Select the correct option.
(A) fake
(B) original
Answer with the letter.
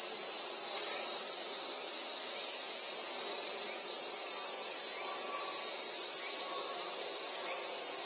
B